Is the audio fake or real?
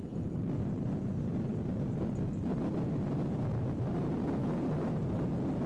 real